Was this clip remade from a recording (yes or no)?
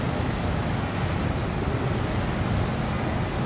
no